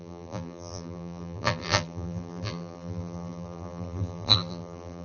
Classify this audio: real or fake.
fake